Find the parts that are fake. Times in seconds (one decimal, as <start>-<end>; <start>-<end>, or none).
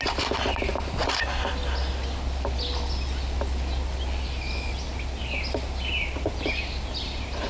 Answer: none